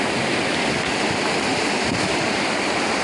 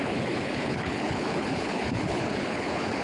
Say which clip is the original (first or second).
first